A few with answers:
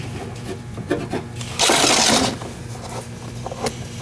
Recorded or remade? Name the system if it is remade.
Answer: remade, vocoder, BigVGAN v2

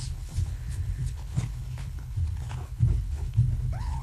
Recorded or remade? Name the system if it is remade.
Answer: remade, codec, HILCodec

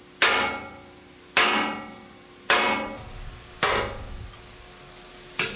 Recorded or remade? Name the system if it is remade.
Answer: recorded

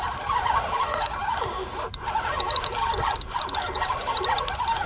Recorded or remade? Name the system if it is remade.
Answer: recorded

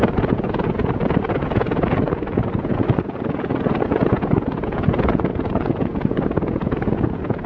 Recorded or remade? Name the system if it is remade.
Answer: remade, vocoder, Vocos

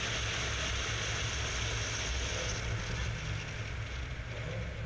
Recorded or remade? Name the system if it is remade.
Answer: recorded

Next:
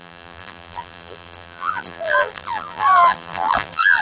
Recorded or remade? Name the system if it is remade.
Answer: remade, vocoder, BigVGAN v2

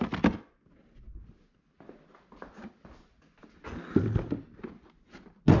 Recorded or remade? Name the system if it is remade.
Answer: recorded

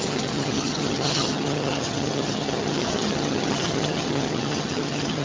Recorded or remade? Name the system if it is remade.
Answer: remade, vocoder, HiFi-GAN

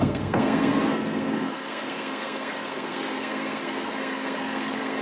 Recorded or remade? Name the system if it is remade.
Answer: remade, codec, SNAC